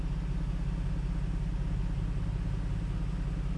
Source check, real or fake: real